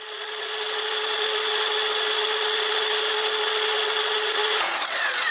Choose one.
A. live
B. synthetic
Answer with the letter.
B